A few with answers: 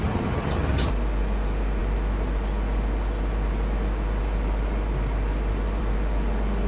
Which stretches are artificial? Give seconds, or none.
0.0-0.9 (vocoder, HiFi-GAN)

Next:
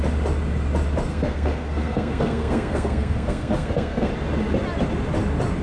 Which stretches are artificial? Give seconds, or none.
1.1-4.1 (codec, SNAC)

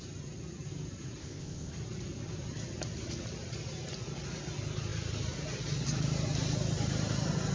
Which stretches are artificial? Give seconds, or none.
1.2-1.7 (codec, ZipCodec)

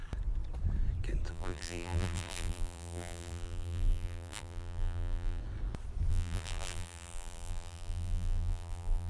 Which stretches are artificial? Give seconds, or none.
1.3-5.4 (vocoder, BigVGAN v2); 6.1-9.1